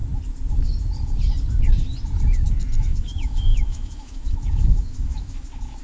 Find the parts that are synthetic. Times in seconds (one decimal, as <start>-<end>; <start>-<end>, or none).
2.8-5.8